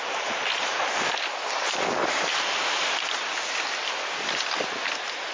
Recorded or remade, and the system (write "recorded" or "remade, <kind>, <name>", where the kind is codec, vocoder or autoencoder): recorded